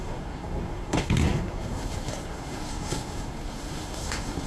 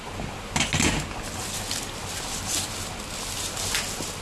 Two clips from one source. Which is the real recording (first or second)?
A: second